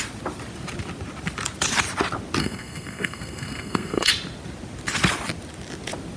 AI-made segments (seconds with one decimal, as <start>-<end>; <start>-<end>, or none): 2.4-4.1